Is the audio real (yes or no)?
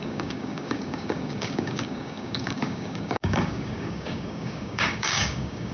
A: no